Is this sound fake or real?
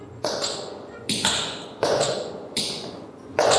fake